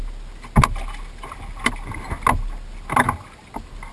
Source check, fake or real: real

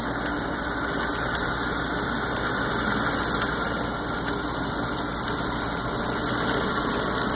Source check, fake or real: real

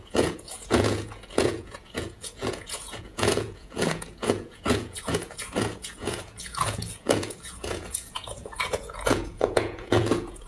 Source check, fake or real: fake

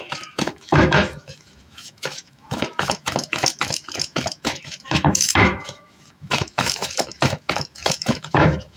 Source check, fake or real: fake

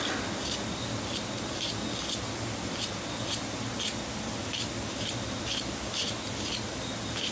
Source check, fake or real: real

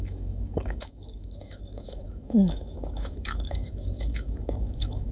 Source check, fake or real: fake